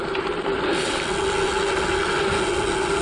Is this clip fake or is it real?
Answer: real